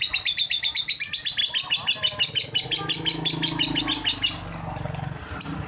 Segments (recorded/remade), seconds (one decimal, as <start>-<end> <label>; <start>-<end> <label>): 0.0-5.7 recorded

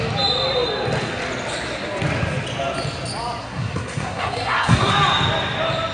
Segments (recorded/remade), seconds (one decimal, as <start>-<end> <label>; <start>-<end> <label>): 0.0-3.4 recorded; 3.4-4.9 remade; 4.9-5.9 recorded

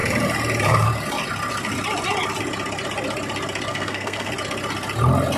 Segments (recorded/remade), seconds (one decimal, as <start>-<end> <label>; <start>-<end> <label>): 0.0-3.7 recorded; 3.7-4.3 remade; 4.3-5.4 recorded